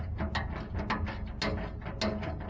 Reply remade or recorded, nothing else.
recorded